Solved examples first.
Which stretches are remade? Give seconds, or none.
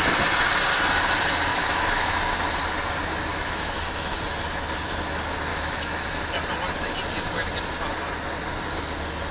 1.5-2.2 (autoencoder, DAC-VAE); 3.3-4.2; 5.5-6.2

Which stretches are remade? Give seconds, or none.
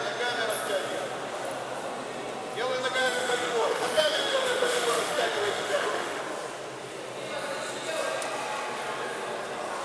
3.0-6.2 (autoencoder, DAC-VAE)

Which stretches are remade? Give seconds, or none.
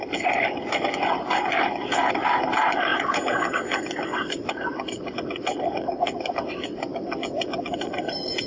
none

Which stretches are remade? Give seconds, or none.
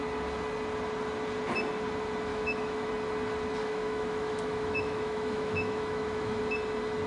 2.3-2.9 (autoencoder, DAC-VAE); 3.6-6.4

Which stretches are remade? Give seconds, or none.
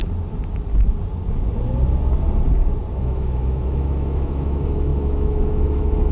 3.0-6.1 (autoencoder, DAC-VAE)